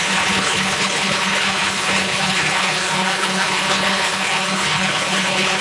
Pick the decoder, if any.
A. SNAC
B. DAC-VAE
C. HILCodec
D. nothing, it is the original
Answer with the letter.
C